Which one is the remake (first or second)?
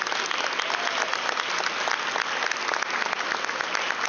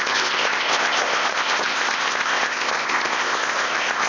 second